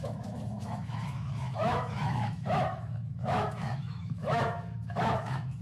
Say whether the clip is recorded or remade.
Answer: remade